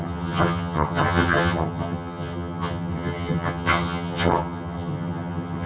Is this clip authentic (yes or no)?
no